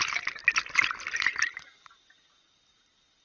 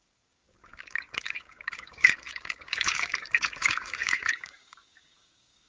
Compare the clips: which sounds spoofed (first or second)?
second